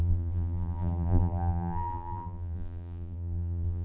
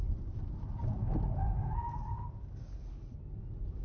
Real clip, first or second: second